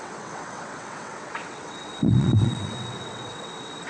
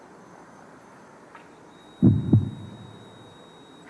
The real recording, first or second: second